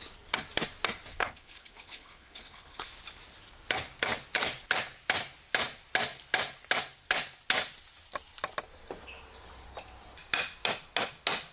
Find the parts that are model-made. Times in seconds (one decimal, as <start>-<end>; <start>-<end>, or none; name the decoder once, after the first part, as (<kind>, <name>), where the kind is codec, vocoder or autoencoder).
1.1-2.9 (codec, HILCodec)